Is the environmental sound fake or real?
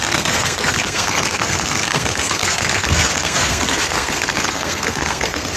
fake